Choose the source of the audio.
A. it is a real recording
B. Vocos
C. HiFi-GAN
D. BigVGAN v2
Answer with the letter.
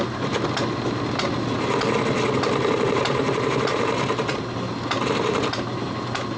D